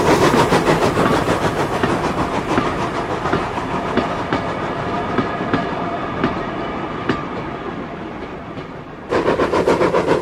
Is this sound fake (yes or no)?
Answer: no